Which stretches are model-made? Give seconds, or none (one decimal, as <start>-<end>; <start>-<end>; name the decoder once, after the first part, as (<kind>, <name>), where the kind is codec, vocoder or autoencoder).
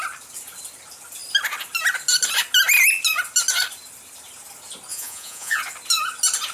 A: 4.9-5.6 (vocoder, Vocos)